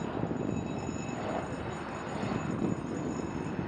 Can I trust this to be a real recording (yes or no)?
yes